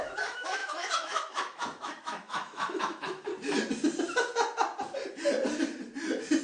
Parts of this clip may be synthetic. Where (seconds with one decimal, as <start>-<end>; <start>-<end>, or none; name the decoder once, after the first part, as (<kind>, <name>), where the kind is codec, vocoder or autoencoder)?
0.0-3.3 (autoencoder, DAC-VAE)